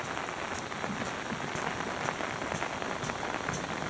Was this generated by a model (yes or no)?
no